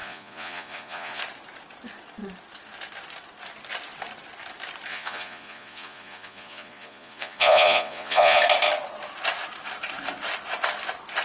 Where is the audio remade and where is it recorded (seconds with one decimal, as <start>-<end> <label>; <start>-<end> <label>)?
0.0-1.2 remade; 1.2-4.9 recorded; 4.9-8.4 remade; 8.4-11.2 recorded